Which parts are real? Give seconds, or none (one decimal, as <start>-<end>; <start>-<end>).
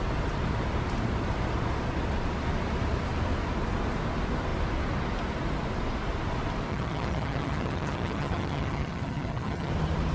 0.0-6.7; 9.7-10.1